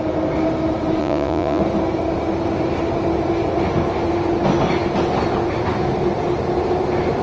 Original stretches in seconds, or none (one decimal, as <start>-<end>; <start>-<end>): 0.0-1.0; 1.6-7.2